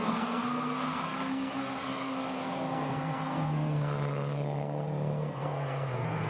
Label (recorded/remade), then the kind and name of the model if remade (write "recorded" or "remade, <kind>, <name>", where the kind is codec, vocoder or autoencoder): remade, codec, SNAC